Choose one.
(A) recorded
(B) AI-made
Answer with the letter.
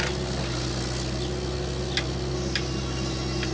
A